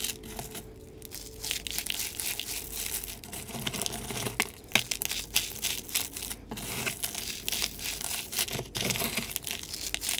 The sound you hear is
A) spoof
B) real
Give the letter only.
B